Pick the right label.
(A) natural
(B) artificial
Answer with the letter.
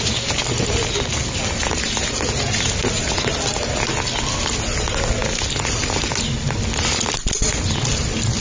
A